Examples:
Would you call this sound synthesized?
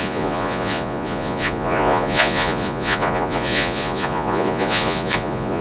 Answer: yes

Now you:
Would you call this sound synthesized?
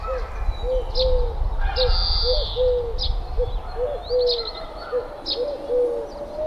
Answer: no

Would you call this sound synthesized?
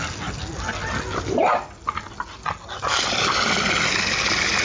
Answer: no